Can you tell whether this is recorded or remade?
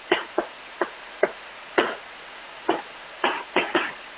remade